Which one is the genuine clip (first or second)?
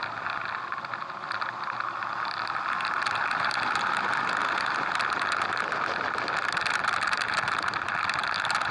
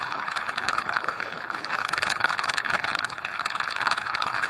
first